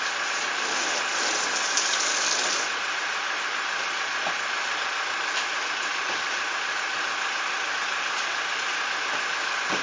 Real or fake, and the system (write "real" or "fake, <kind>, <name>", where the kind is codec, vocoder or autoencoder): real